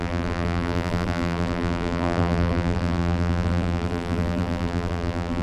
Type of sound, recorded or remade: remade